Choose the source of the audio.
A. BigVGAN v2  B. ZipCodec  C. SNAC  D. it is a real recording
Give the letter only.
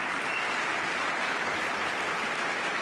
D